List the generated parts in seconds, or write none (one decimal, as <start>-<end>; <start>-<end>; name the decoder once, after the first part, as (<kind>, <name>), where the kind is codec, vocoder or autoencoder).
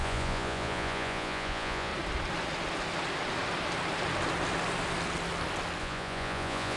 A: 0.0-1.9 (vocoder, Vocos); 5.8-6.8